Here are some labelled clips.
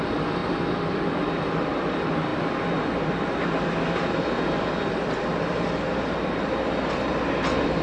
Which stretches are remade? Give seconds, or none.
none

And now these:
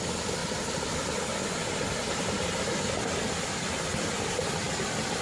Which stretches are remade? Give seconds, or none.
none

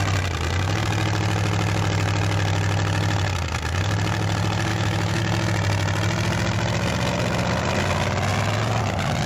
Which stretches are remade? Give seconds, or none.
4.7-5.2 (autoencoder, DAC-VAE)

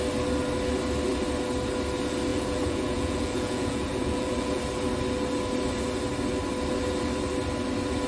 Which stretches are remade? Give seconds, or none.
2.3-4.6 (vocoder, Vocos)

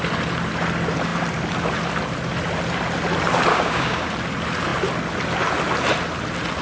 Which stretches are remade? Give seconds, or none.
3.5-4.1 (codec, DAC)